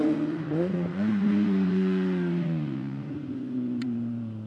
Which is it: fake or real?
fake